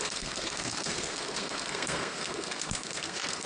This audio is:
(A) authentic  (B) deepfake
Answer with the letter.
B